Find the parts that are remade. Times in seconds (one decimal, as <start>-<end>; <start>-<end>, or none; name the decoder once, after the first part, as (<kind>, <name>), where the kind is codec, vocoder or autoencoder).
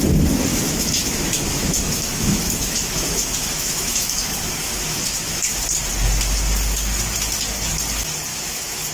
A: 0.5-5.6 (autoencoder, DAC-VAE); 8.3-8.9